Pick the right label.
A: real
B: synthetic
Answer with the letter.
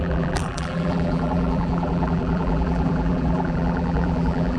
B